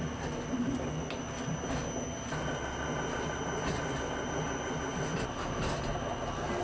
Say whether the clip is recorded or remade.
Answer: recorded